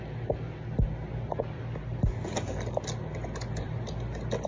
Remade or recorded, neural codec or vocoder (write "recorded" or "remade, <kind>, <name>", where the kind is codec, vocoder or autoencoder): recorded